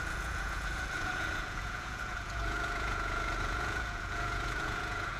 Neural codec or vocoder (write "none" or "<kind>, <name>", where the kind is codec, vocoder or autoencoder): vocoder, Vocos